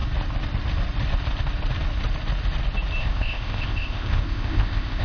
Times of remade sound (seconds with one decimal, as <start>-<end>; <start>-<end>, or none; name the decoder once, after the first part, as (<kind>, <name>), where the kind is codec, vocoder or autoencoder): 3.0-5.0 (codec, ZipCodec)